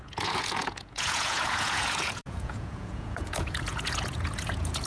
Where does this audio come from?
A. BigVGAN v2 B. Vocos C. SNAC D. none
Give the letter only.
B